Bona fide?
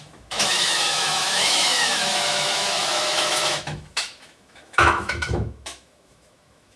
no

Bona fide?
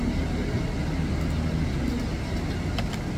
yes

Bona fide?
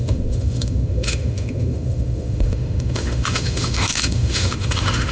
no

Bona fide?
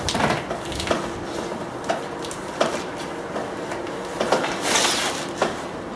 yes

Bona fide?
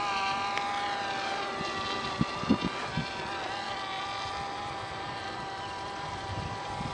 yes